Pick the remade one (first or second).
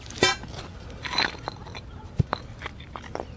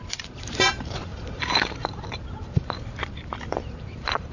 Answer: second